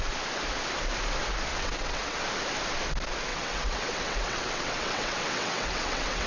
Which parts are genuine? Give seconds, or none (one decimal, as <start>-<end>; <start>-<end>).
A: 0.0-1.5; 2.2-3.3